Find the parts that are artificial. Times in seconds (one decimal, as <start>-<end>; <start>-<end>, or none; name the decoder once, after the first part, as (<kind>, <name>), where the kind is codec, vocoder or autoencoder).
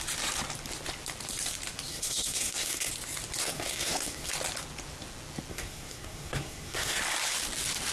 1.9-2.9 (codec, SNAC); 3.4-4.3; 5.5-7.0